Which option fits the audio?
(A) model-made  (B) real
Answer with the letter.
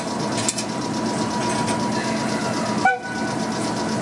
B